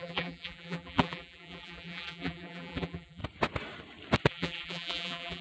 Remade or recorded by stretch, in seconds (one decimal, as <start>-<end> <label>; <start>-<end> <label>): 0.0-3.2 remade; 3.2-4.3 recorded; 4.3-5.4 remade

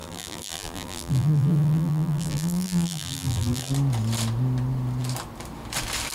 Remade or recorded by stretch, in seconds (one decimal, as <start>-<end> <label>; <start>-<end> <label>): 0.0-3.7 remade; 3.7-6.1 recorded

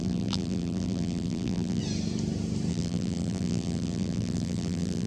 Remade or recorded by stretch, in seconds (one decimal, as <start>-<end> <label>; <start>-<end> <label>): 0.0-1.8 remade; 1.8-2.7 recorded; 2.7-5.1 remade